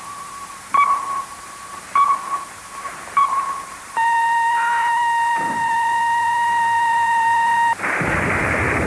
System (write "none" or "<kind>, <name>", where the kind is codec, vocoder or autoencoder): vocoder, BigVGAN v2